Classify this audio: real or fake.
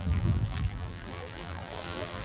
fake